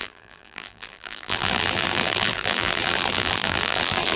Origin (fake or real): fake